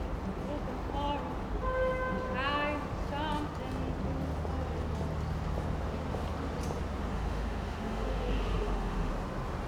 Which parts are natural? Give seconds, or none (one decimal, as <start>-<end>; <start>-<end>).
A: 0.0-7.1; 9.1-9.7